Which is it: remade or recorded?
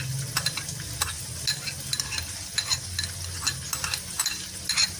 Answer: recorded